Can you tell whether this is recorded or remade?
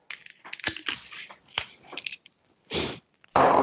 recorded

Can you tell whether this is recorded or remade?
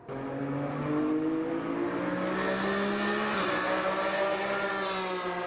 recorded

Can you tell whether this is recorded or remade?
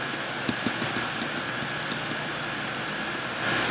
recorded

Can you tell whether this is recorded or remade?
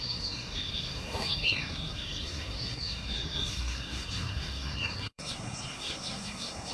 remade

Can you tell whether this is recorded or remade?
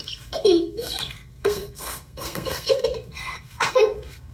remade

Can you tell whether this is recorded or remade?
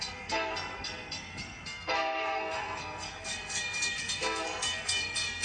remade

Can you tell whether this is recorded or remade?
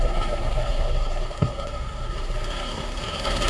remade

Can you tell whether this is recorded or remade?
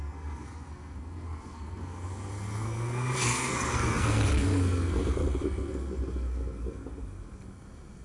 remade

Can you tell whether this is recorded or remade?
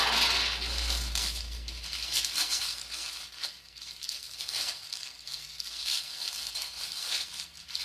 remade